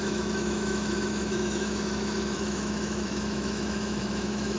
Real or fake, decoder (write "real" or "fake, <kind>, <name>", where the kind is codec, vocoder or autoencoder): fake, autoencoder, DAC-VAE